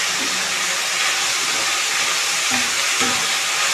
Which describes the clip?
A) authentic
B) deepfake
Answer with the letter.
A